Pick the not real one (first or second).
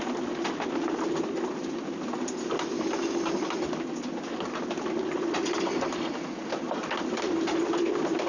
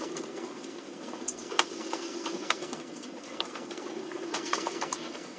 second